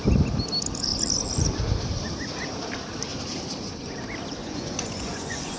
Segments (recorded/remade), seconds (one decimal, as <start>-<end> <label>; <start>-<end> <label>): 0.0-4.4 recorded; 4.4-5.6 remade